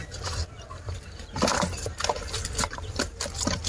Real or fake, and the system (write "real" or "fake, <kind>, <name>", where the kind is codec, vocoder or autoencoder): real